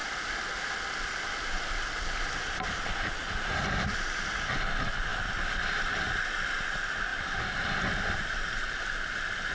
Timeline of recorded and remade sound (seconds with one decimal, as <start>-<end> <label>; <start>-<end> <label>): 0.0-9.5 recorded